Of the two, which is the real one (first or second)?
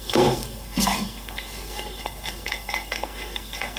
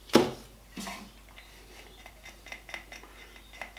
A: second